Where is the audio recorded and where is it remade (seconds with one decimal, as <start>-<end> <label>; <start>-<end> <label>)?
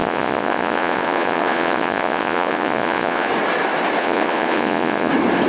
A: 0.0-3.3 remade; 3.3-4.0 recorded; 4.0-5.1 remade; 5.1-5.5 recorded